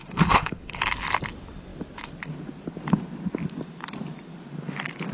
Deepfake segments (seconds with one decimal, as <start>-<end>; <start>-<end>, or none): 0.0-0.8